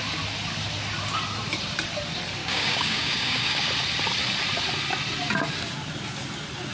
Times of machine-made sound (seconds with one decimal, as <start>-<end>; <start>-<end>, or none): 2.4-3.7